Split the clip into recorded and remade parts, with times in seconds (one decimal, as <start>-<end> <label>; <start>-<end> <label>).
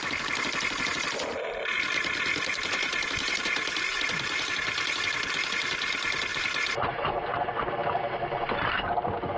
0.0-2.4 recorded; 2.4-5.8 remade; 5.8-6.3 recorded; 6.3-7.4 remade; 7.4-9.4 recorded